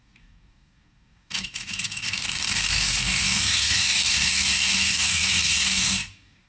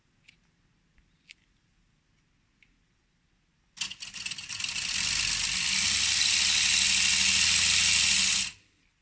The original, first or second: second